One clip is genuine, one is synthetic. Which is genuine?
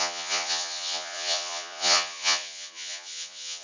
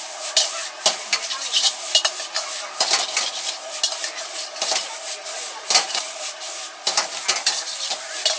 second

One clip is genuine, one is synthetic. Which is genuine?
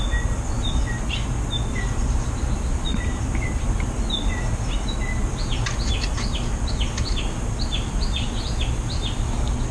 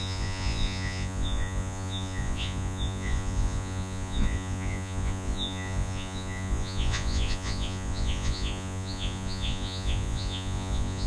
first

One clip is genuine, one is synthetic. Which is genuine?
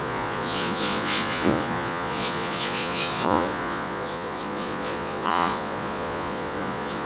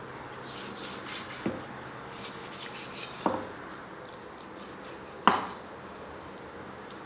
second